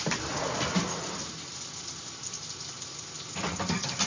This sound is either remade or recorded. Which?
recorded